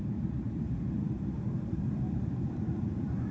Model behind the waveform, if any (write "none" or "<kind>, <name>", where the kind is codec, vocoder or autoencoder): vocoder, BigVGAN v2